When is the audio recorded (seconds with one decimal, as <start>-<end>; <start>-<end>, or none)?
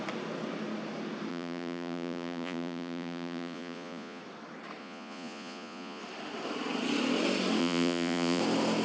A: 0.0-1.3; 4.2-4.8; 6.0-7.6; 8.4-8.8